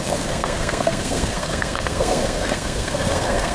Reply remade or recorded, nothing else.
remade